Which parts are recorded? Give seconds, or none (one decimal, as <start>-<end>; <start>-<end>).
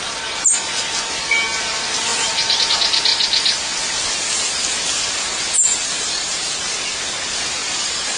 0.0-5.7; 6.6-7.6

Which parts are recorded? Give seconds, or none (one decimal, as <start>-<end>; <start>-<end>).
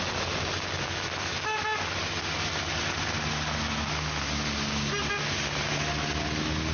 0.0-6.7